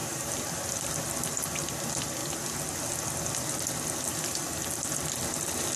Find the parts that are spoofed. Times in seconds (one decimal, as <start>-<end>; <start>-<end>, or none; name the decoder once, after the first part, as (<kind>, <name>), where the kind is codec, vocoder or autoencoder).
0.0-0.6 (vocoder, BigVGAN v2)